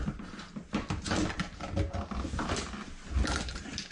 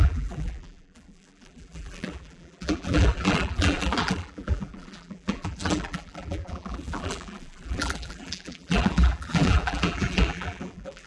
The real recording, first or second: first